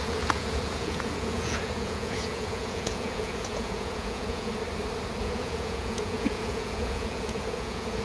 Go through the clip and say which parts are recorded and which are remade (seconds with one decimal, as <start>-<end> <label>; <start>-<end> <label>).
0.0-4.5 remade; 4.5-5.2 recorded; 5.2-8.0 remade